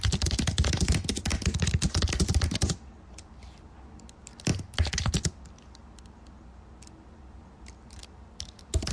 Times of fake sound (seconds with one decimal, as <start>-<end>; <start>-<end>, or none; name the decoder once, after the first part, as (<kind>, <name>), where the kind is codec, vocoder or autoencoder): none